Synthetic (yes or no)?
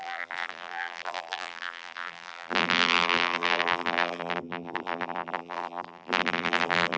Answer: yes